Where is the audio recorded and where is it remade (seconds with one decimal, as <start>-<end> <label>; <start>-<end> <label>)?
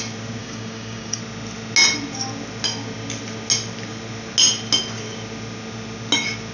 0.0-0.4 recorded; 0.4-1.2 remade; 1.2-6.5 recorded